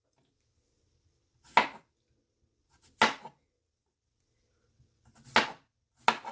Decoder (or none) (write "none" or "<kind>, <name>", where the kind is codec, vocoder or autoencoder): none